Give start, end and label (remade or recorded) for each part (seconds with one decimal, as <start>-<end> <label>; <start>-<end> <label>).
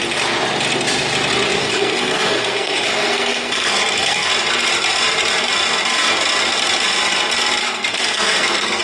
0.0-1.6 recorded; 1.6-4.3 remade; 4.3-7.6 recorded; 7.6-8.8 remade